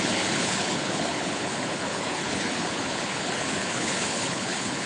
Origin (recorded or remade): remade